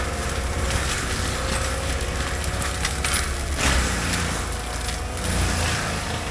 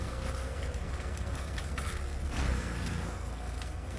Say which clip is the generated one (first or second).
second